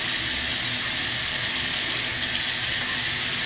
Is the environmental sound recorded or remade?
recorded